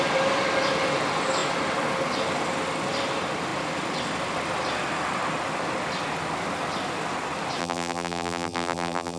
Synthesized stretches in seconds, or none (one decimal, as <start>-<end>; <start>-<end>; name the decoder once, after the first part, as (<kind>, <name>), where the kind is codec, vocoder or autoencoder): 7.6-9.2 (vocoder, BigVGAN v2)